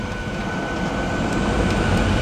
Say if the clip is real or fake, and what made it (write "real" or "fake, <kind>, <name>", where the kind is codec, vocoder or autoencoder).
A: real